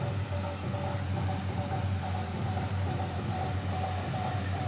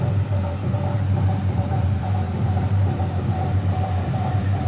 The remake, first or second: second